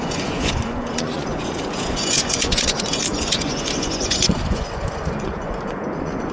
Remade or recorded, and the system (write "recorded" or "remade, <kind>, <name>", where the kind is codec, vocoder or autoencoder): remade, vocoder, Vocos